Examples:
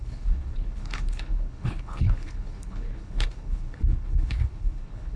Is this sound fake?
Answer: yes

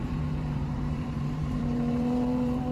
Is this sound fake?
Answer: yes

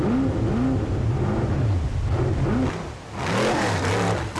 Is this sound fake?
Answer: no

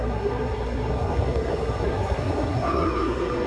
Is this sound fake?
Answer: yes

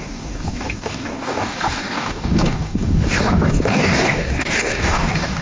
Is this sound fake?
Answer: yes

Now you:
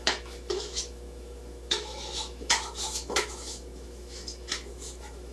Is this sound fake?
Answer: yes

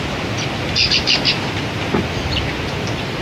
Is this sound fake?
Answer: no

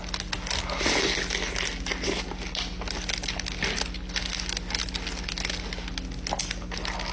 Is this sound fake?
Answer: no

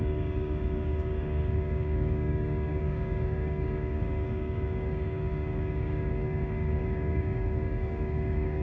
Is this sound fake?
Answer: yes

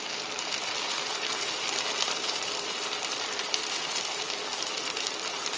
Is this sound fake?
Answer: yes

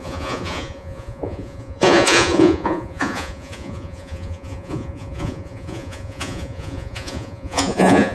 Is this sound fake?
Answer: yes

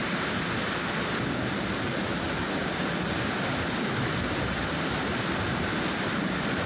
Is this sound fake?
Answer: no